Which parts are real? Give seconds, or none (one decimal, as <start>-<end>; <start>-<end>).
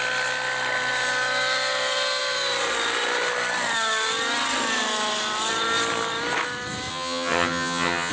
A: 0.0-6.9